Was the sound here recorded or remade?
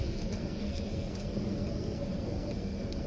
remade